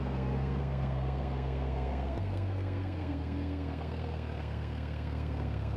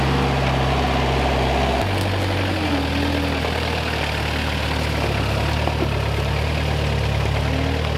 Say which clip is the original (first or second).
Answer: second